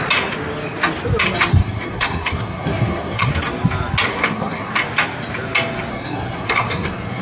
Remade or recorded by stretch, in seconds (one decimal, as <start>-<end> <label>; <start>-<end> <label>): 0.0-1.5 recorded; 1.5-3.3 remade; 3.3-4.1 recorded; 4.1-4.7 remade; 4.7-5.9 recorded; 5.9-7.2 remade